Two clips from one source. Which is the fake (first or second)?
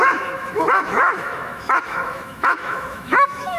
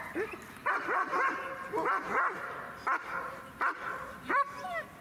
first